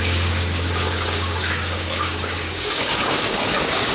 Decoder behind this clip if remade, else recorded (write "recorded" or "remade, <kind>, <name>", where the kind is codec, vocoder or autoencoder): remade, codec, DAC